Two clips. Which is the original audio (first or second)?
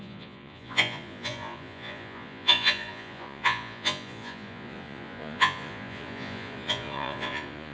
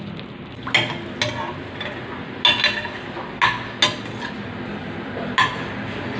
second